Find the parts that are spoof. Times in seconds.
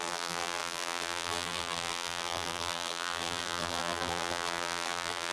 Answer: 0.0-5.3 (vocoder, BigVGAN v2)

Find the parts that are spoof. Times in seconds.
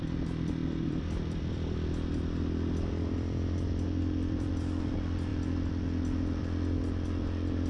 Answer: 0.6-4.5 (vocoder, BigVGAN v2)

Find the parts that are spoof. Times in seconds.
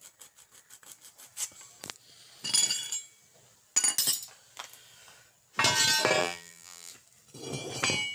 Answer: 6.2-6.9 (vocoder, BigVGAN v2)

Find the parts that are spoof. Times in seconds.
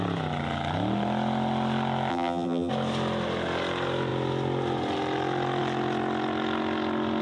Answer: 2.1-2.7 (vocoder, BigVGAN v2)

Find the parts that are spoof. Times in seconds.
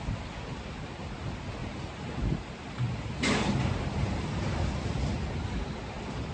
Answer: 1.6-4.3 (vocoder, BigVGAN v2)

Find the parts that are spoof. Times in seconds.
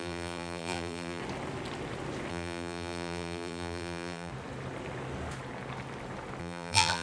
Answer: 0.0-1.2 (vocoder, BigVGAN v2); 2.3-4.3; 6.4-7.0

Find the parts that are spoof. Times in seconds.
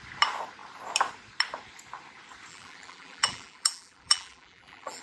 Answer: 2.5-5.0 (vocoder, BigVGAN v2)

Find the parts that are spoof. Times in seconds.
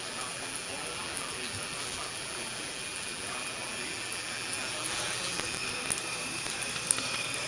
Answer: 0.0-5.6 (vocoder, BigVGAN v2)